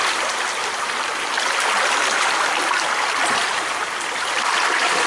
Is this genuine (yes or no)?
yes